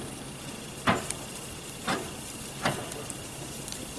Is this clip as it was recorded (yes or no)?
yes